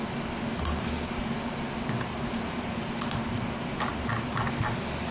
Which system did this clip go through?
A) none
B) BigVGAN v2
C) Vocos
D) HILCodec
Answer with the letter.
A